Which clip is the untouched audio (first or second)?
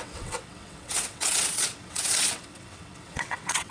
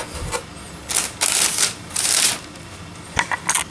second